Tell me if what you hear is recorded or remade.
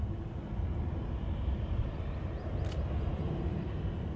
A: recorded